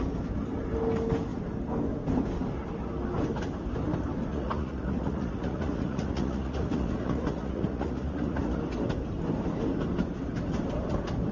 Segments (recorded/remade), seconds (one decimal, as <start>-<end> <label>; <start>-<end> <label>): 0.0-4.3 recorded; 4.3-8.6 remade; 8.6-11.3 recorded